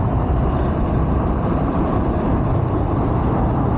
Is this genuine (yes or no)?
no